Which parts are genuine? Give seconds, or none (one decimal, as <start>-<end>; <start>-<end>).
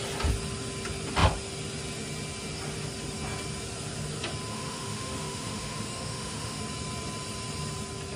0.0-4.5; 6.6-8.2